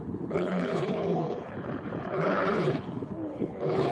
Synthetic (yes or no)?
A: yes